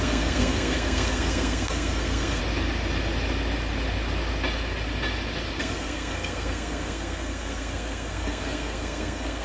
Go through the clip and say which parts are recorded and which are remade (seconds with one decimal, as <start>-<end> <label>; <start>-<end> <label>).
0.0-2.4 remade; 2.4-5.6 recorded; 5.6-9.4 remade